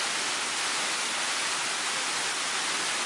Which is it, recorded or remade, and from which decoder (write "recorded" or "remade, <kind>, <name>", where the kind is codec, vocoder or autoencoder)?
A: recorded